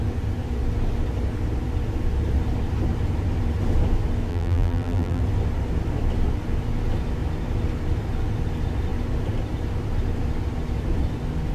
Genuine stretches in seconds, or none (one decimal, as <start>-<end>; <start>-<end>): 0.0-4.3; 5.2-11.5